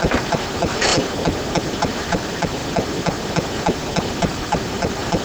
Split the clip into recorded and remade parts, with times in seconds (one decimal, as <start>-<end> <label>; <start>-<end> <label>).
0.0-0.9 remade; 0.9-1.8 recorded; 1.8-2.6 remade; 2.6-4.2 recorded; 4.2-5.2 remade